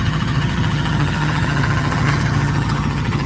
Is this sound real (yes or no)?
no